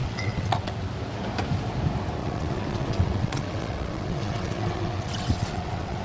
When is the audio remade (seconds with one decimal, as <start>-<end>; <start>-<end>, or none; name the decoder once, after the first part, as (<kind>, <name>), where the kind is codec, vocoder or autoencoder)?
0.0-0.7 (vocoder, WaveNeXt); 2.2-6.0